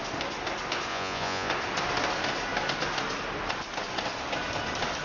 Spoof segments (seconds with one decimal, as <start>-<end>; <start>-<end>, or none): 0.9-1.5